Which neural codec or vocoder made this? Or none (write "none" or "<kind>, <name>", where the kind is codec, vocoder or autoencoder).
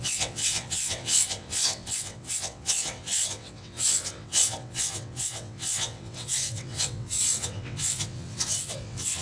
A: vocoder, WaveNeXt